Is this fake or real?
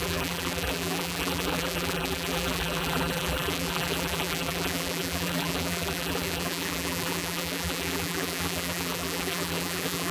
fake